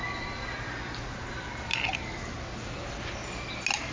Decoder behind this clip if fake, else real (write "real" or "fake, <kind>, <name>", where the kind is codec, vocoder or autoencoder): real